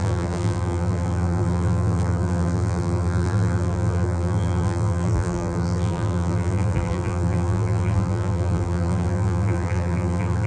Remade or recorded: remade